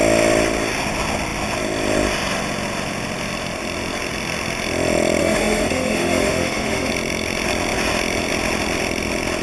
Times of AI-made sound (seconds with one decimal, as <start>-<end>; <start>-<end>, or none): 5.2-6.9

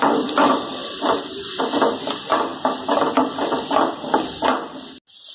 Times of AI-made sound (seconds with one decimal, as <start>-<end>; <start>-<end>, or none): none

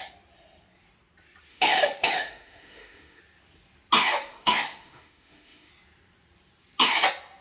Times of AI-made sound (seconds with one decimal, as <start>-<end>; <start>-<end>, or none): 1.5-3.2; 4.2-5.7

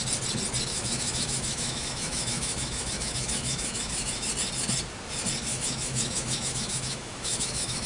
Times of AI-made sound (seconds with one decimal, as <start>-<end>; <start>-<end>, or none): 0.7-4.3; 5.5-7.9

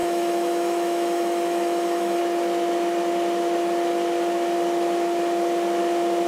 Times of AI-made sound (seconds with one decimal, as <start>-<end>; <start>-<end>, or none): 0.0-2.2

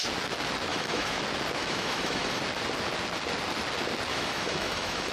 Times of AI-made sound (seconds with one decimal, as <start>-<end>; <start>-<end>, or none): 0.7-1.2; 1.6-2.4; 4.1-5.1

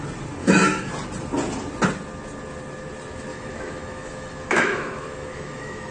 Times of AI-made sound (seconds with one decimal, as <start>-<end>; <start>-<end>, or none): 0.4-0.9; 3.3-5.9